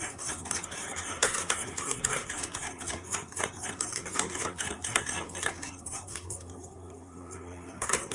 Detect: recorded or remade remade